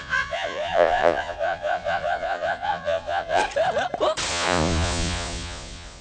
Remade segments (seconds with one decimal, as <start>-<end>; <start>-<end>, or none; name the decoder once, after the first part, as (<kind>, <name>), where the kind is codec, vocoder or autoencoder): 0.0-3.4 (vocoder, Vocos); 4.3-6.0